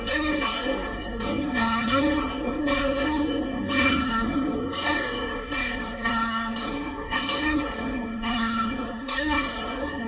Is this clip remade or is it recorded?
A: remade